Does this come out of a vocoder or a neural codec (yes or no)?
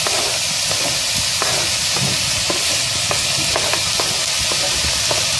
no